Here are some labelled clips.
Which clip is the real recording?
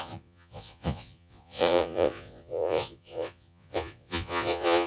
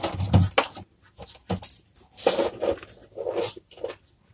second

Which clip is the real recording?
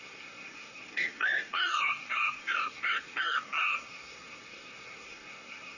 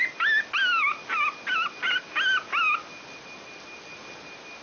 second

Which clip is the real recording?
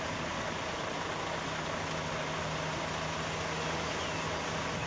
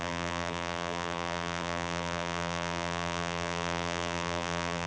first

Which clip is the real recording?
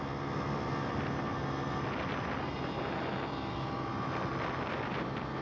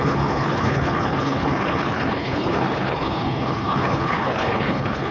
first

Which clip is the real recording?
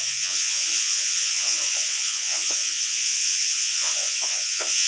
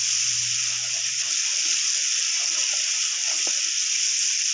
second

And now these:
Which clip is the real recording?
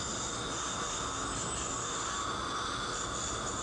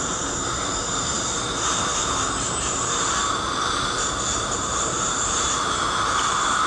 first